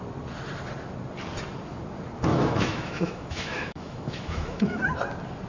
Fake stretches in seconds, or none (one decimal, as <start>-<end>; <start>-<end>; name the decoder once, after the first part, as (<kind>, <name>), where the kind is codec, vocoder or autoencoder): 2.3-4.8 (autoencoder, DAC-VAE)

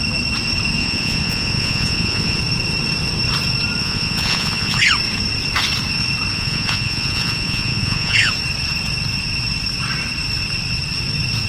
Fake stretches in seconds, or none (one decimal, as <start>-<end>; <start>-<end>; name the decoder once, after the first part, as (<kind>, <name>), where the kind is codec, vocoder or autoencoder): 0.8-2.4 (vocoder, Vocos); 3.8-4.8; 6.3-8.3